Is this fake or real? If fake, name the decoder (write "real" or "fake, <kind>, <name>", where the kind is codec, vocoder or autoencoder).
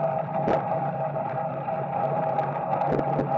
real